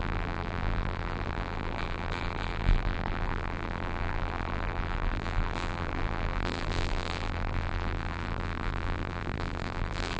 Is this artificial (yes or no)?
yes